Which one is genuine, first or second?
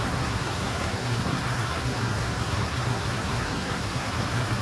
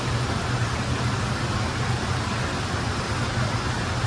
second